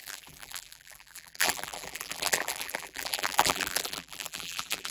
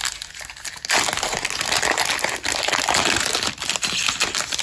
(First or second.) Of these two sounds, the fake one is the first